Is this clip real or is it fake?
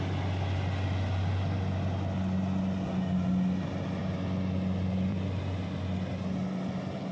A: real